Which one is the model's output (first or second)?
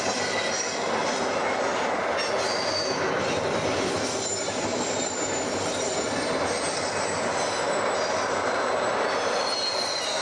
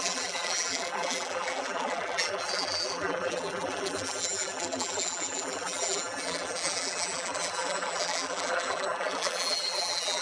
second